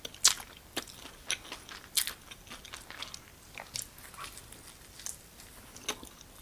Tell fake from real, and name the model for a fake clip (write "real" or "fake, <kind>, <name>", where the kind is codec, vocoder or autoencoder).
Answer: real